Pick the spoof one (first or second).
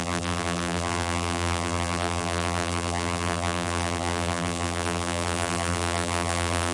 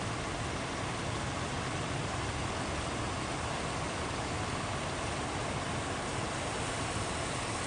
first